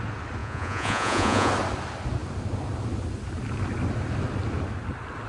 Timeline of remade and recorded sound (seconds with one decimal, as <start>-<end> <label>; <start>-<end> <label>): 0.0-0.4 recorded; 0.4-1.5 remade; 1.5-5.3 recorded